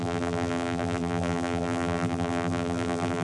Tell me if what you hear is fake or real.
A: fake